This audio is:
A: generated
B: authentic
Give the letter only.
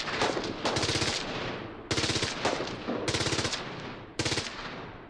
B